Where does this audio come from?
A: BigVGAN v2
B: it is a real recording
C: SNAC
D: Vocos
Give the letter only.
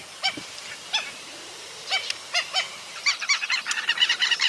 A